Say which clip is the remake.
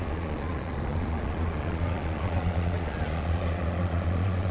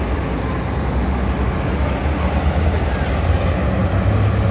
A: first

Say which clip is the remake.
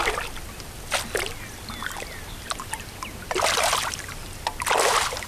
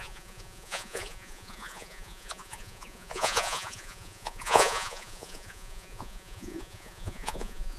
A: second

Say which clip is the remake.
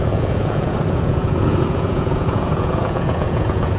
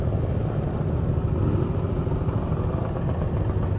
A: first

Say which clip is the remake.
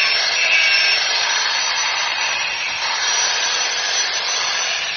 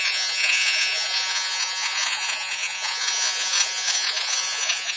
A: second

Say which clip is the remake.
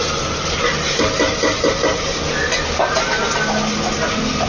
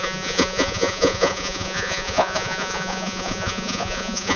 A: second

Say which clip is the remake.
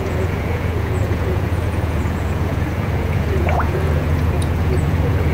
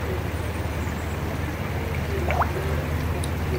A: first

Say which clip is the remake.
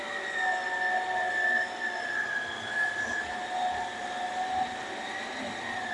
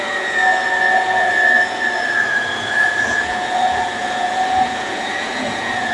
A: second